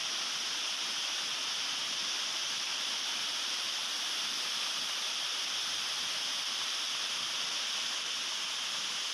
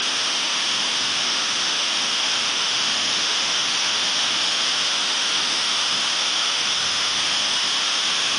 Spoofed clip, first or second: second